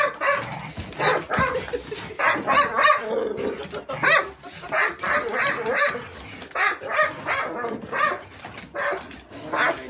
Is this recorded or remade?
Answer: recorded